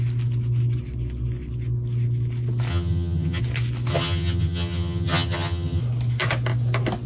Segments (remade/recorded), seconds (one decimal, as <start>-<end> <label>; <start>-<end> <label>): 0.0-2.7 recorded; 2.7-3.4 remade; 3.4-3.9 recorded; 3.9-5.8 remade; 5.8-7.1 recorded